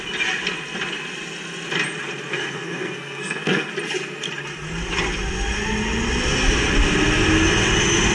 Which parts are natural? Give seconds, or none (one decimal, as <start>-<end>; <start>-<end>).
0.0-2.3; 3.7-8.1